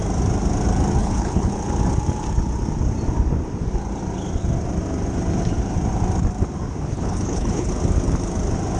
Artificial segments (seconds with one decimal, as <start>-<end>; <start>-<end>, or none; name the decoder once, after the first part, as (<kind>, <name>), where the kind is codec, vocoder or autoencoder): 1.0-1.5 (codec, HILCodec); 6.9-7.7